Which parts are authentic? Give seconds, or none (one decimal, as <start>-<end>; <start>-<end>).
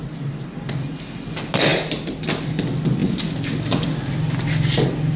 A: 0.0-5.2